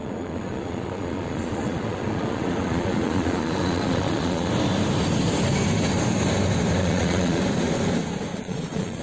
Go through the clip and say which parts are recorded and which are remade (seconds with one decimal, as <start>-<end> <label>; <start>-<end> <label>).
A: 0.0-4.5 remade; 4.5-6.8 recorded; 6.8-7.4 remade; 7.4-8.3 recorded; 8.3-9.0 remade